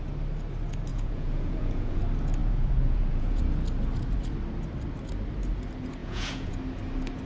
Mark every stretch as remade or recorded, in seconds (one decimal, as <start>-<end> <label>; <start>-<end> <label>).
0.0-0.9 recorded; 0.9-2.0 remade; 2.0-2.4 recorded; 2.4-3.4 remade; 3.4-6.0 recorded; 6.0-6.5 remade; 6.5-7.3 recorded